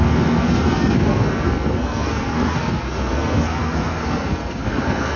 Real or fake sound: fake